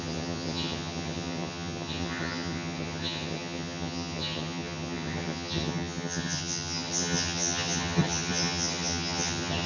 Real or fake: fake